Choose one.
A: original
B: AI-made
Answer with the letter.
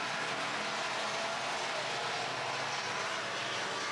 A